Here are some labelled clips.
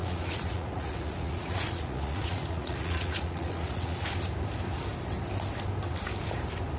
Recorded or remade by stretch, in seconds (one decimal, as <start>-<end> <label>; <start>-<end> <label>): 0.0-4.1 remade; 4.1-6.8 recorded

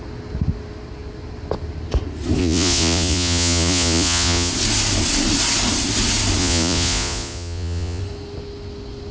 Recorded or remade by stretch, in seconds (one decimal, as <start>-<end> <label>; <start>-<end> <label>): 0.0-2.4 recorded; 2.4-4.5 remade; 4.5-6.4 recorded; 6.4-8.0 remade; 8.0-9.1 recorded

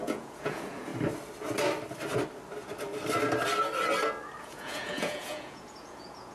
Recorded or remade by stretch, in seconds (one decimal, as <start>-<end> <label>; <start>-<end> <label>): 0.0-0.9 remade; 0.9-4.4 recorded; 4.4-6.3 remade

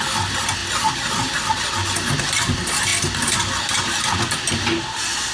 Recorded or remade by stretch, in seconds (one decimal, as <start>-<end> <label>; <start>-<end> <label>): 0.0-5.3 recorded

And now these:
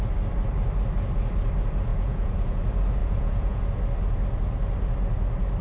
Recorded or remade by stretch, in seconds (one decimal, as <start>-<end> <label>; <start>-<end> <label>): 0.0-1.9 recorded; 1.9-2.6 remade; 2.6-3.0 recorded; 3.0-3.6 remade; 3.6-5.6 recorded

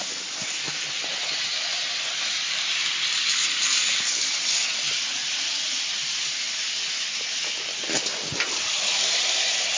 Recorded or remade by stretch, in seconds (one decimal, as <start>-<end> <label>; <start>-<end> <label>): 0.0-9.8 recorded

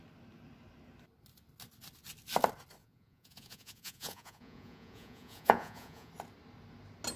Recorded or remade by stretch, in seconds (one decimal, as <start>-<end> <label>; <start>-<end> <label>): 0.0-2.8 recorded; 2.8-6.1 remade; 6.1-7.2 recorded